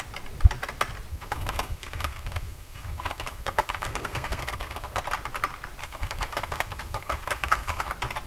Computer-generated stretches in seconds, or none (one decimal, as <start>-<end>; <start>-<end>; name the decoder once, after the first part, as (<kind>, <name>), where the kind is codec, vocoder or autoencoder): 1.1-5.0 (codec, SNAC); 5.8-7.9